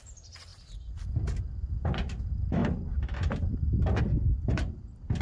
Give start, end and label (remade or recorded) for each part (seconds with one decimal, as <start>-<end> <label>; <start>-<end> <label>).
0.0-2.6 remade; 2.6-4.0 recorded; 4.0-5.2 remade